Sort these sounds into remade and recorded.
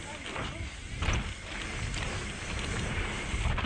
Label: recorded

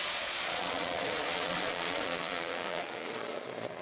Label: remade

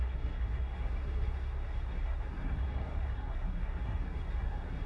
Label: remade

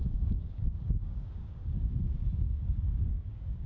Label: remade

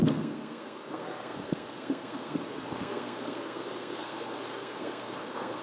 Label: remade